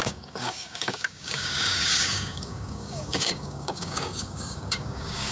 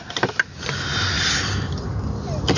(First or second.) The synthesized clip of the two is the first